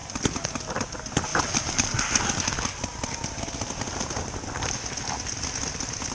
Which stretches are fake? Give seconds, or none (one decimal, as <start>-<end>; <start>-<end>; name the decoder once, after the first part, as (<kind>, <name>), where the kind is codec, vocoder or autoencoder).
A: none